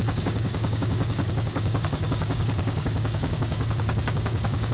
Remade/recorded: remade